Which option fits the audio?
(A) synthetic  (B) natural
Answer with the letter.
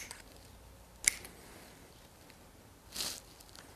B